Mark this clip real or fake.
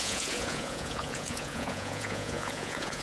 fake